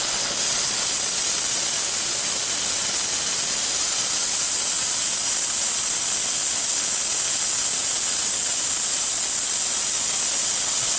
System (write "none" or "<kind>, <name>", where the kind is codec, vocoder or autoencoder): none